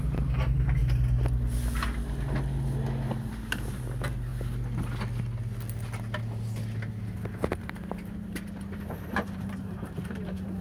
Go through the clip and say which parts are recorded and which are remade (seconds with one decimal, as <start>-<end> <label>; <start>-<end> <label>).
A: 0.0-0.8 remade; 0.8-3.3 recorded; 3.3-4.3 remade; 4.3-7.6 recorded; 7.6-10.6 remade